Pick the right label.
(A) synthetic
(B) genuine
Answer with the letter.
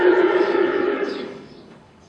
A